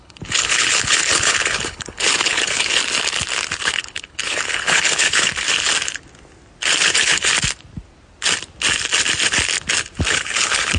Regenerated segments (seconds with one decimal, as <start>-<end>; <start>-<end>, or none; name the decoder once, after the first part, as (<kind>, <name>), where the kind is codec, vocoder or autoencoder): 0.0-2.8 (codec, HILCodec); 3.6-5.3; 6.8-7.3; 10.1-10.8